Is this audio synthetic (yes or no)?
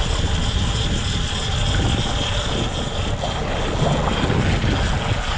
no